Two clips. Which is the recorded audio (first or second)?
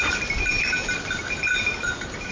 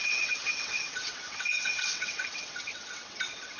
first